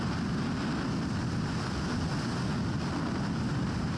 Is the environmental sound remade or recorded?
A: recorded